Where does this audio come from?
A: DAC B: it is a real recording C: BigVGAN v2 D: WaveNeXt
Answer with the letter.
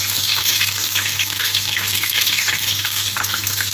A